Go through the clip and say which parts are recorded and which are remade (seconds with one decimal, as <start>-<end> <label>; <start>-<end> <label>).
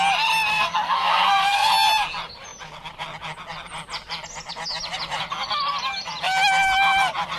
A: 0.0-0.5 recorded; 0.5-1.7 remade; 1.7-7.4 recorded